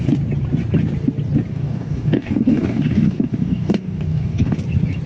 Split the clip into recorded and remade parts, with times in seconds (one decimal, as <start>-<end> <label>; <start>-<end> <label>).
0.0-1.5 recorded; 1.5-4.6 remade; 4.6-5.1 recorded